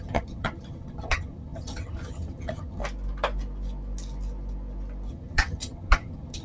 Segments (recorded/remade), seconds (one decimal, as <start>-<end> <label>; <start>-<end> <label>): 0.0-2.8 remade; 2.8-5.1 recorded; 5.1-6.4 remade